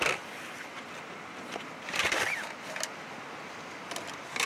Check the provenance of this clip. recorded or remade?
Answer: recorded